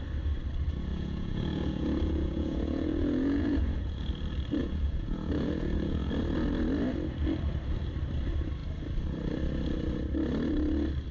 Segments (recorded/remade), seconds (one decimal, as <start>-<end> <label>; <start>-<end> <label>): 0.0-0.9 recorded; 0.9-4.1 remade; 4.1-4.6 recorded; 4.6-6.1 remade; 6.1-11.1 recorded